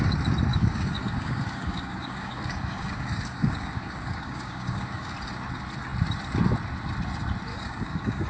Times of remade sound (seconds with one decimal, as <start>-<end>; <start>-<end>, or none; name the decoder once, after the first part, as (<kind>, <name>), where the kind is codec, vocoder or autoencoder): 0.5-5.1 (codec, DAC); 7.5-8.3

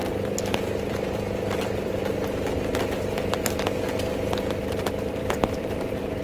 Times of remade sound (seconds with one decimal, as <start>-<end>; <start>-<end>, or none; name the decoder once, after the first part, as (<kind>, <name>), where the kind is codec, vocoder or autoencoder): 0.0-2.1 (vocoder, BigVGAN v2); 5.2-6.2